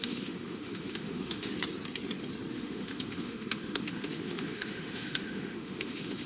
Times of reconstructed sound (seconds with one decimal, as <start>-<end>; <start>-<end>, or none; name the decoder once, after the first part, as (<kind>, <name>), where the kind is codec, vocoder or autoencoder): 0.0-1.5 (autoencoder, DAC-VAE); 2.5-6.3